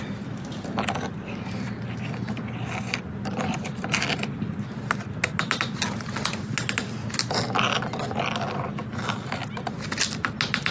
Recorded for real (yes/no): yes